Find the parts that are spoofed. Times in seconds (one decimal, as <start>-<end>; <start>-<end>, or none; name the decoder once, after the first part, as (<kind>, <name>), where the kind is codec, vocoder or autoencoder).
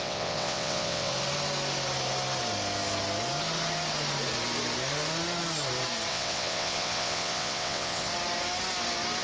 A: 0.0-1.1 (vocoder, WaveNeXt); 6.1-8.1